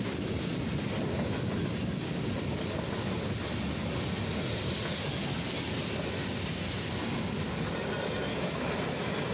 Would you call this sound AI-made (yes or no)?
no